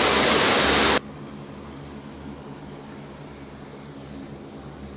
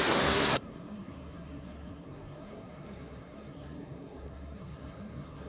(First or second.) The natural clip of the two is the first